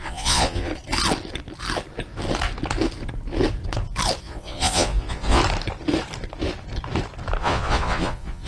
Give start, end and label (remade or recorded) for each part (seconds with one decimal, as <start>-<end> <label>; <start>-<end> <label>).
0.0-0.7 remade; 0.7-4.2 recorded; 4.2-5.4 remade; 5.4-7.4 recorded; 7.4-8.5 remade